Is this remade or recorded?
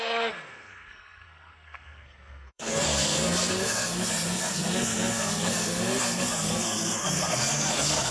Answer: remade